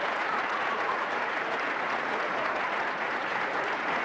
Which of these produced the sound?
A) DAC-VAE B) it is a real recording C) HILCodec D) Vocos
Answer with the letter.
D